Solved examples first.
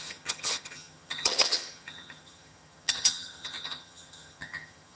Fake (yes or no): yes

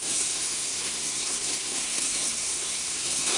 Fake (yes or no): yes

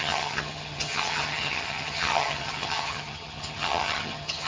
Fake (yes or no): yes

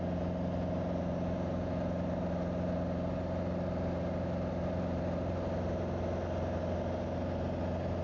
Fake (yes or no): no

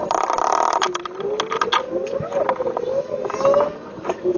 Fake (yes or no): no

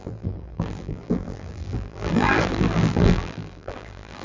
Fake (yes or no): yes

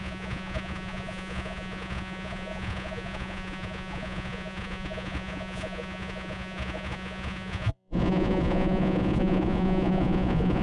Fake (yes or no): yes